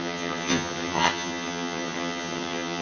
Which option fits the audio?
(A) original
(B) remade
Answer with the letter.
B